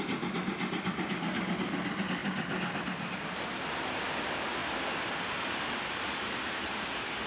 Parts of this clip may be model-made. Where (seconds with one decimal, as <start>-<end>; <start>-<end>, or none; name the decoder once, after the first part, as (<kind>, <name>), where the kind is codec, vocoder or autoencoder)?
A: 2.2-4.0 (vocoder, BigVGAN v2)